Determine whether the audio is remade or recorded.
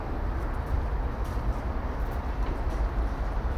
remade